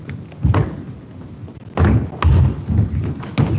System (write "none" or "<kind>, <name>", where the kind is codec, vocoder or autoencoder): none